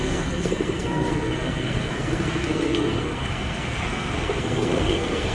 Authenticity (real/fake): fake